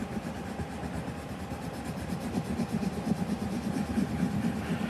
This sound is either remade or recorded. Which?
recorded